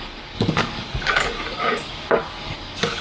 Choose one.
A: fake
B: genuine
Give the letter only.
A